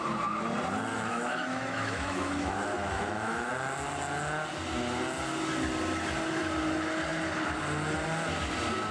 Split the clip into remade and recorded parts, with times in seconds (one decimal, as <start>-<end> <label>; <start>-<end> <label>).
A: 0.0-0.9 recorded; 0.9-3.5 remade; 3.5-8.9 recorded